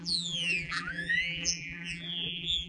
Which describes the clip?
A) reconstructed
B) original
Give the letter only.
A